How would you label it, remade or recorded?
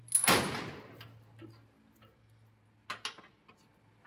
recorded